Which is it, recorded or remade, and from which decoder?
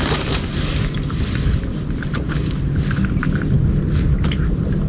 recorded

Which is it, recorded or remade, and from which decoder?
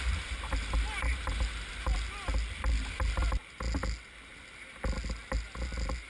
recorded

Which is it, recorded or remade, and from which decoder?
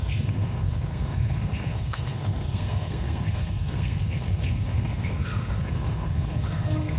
remade, codec, SNAC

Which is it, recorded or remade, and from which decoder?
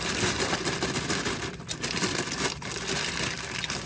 recorded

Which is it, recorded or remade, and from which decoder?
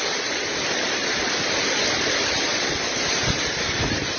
recorded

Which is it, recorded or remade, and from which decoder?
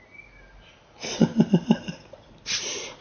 recorded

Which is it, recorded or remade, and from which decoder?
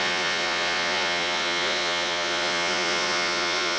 remade, vocoder, Vocos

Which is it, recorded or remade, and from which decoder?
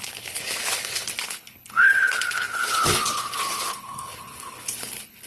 remade, codec, HILCodec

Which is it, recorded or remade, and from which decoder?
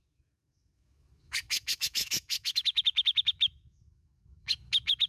remade, autoencoder, DAC-VAE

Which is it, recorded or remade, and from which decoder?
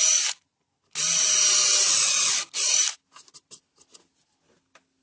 recorded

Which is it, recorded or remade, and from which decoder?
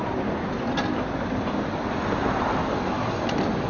recorded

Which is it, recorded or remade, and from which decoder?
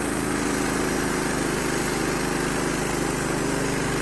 recorded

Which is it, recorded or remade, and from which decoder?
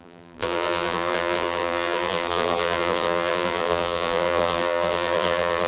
remade, vocoder, BigVGAN v2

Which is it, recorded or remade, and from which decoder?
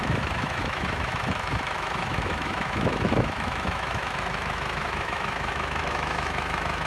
remade, autoencoder, DAC-VAE